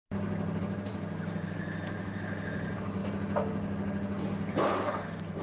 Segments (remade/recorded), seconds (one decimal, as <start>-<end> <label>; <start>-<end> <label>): 0.0-0.6 recorded; 0.6-3.0 remade; 3.0-4.2 recorded; 4.2-5.4 remade